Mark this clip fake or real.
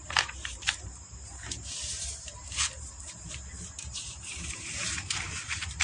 fake